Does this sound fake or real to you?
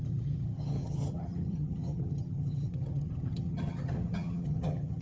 fake